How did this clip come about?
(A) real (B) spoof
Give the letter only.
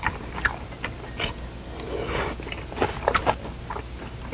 A